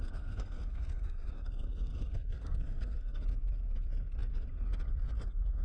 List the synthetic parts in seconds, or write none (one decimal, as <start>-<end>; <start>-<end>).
0.0-3.2